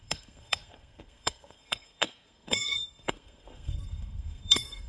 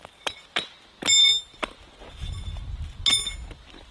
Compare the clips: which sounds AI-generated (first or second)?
first